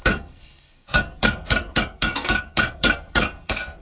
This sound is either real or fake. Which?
fake